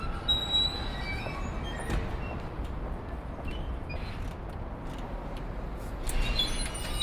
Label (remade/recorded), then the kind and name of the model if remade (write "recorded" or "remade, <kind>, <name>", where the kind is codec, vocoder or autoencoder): recorded